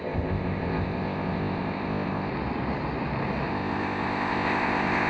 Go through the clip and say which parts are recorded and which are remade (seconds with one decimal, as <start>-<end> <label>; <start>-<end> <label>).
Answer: 0.0-2.3 remade; 2.3-3.5 recorded; 3.5-5.1 remade